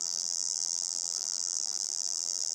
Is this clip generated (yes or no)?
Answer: yes